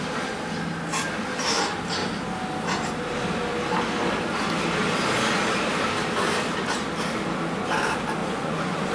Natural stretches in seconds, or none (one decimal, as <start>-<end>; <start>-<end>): 0.0-8.2